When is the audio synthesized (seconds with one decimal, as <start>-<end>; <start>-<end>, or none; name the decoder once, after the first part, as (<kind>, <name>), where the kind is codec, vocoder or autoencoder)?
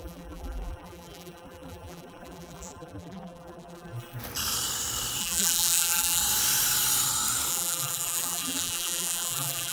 0.0-4.2 (vocoder, BigVGAN v2); 5.2-6.2; 7.5-9.7